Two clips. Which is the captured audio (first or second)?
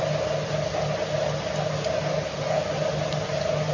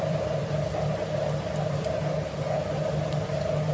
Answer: first